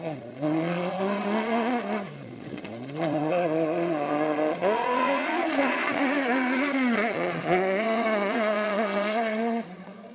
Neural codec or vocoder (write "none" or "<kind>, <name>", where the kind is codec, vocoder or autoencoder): vocoder, Vocos